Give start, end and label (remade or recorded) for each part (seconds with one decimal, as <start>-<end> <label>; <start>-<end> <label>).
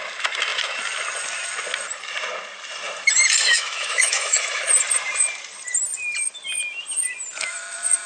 0.0-3.5 recorded; 3.5-4.7 remade; 4.7-8.1 recorded